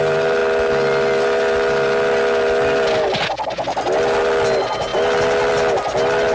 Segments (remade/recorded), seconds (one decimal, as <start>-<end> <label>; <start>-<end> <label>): 0.0-6.3 recorded